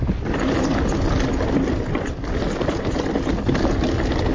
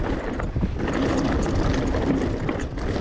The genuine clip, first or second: first